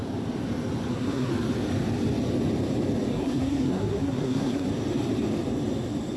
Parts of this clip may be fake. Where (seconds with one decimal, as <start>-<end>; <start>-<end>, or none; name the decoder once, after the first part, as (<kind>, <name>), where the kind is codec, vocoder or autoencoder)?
0.9-1.3 (codec, SNAC); 3.1-4.7

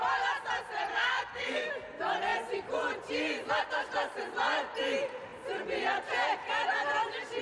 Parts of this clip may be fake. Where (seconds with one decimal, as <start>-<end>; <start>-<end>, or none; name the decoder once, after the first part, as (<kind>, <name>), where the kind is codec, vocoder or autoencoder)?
0.9-1.7 (codec, SNAC)

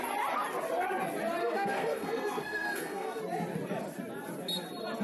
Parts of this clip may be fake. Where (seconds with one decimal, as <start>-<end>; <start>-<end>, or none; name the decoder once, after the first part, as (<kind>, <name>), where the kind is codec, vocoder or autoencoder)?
1.4-3.2 (codec, SNAC)

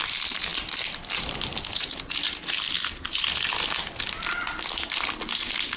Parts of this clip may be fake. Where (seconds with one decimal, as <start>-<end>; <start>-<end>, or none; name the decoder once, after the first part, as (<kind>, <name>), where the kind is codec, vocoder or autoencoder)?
none

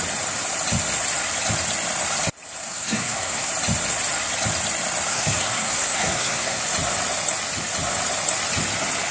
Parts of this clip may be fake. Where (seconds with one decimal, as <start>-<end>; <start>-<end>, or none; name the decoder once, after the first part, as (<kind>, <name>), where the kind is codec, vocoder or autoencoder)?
2.6-3.5 (codec, SNAC); 5.1-6.6

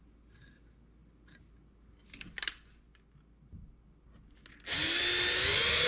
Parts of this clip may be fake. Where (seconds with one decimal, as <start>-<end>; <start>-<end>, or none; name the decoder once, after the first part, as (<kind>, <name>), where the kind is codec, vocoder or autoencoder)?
none

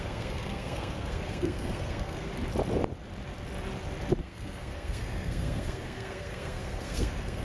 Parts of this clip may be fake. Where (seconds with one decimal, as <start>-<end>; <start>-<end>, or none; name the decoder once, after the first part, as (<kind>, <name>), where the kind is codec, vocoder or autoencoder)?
0.0-2.3 (codec, SNAC); 4.2-7.4

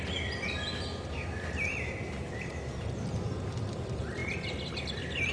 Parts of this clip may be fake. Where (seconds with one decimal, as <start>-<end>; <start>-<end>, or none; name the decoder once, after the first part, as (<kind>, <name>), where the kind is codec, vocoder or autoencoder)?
none